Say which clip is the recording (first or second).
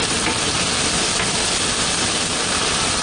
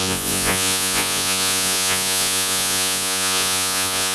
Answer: first